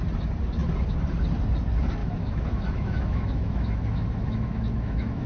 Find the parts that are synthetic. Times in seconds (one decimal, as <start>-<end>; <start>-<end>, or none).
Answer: 2.0-5.3